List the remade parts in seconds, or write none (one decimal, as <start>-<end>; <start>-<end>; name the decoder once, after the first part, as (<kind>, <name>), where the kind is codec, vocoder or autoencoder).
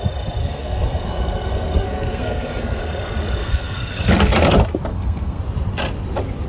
0.4-2.8 (codec, SNAC); 3.4-3.9; 4.9-5.4